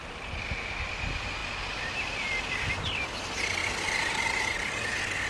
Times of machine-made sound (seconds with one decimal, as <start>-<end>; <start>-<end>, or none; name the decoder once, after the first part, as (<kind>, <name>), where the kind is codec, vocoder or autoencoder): none